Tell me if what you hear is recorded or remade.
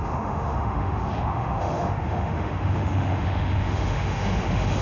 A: remade